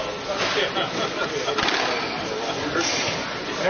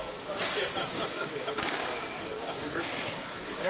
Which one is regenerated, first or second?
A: second